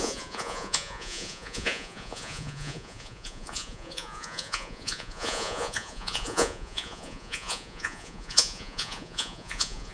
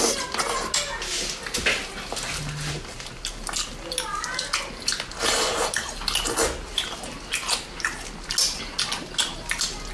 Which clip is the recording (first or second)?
second